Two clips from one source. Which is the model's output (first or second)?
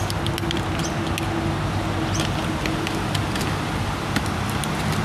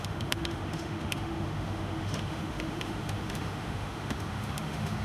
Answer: second